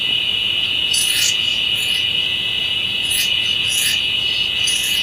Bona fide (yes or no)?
no